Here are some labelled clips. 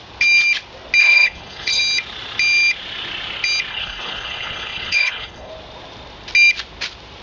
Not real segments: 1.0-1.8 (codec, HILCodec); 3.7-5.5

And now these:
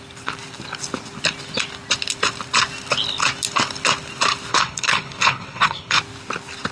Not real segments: 4.5-6.0 (codec, HILCodec)

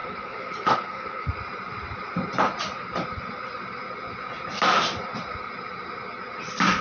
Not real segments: 0.0-1.3 (codec, HILCodec)

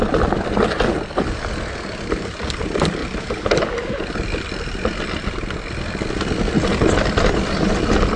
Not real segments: none